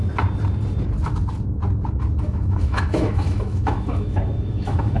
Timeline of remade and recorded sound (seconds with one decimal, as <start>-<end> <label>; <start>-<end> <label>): 0.0-2.2 recorded; 2.2-5.0 remade